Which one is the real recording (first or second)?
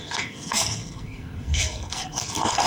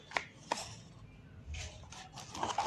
second